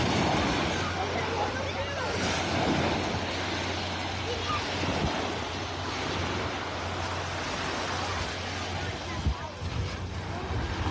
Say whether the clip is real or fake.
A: real